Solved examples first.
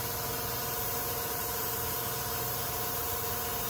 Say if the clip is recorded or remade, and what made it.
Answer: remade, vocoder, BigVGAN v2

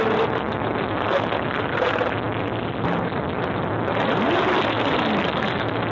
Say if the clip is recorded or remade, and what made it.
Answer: recorded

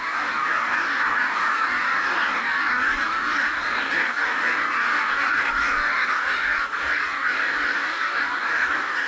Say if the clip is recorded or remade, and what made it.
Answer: remade, codec, DAC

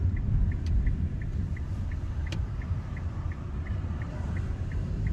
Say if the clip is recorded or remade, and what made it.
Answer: remade, vocoder, BigVGAN v2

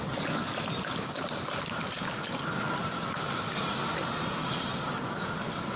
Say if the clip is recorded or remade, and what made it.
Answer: recorded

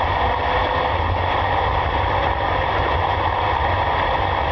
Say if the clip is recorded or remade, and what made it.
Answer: recorded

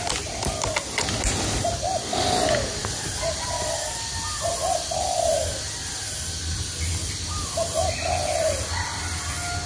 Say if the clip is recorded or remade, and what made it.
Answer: recorded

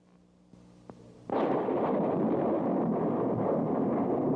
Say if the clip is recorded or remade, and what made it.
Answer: recorded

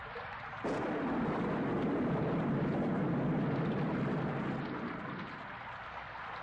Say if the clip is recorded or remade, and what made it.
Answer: recorded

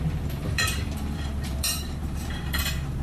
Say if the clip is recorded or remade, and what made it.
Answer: remade, vocoder, BigVGAN v2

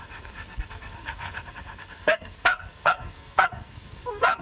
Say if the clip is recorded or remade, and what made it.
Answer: remade, codec, SNAC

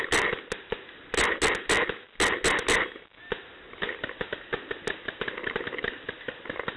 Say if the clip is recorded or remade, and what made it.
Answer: recorded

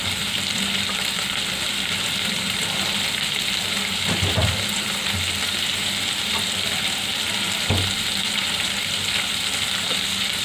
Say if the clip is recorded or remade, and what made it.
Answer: remade, vocoder, BigVGAN v2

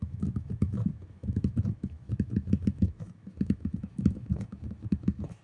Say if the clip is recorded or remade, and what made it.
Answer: remade, autoencoder, DAC-VAE